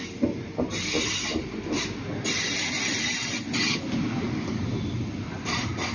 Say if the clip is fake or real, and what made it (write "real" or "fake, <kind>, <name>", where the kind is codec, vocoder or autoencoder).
real